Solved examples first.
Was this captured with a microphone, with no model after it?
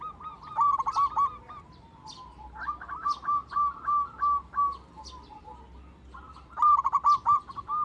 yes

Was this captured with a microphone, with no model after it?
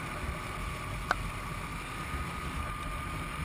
yes